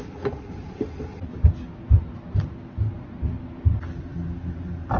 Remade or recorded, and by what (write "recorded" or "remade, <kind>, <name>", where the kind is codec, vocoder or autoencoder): recorded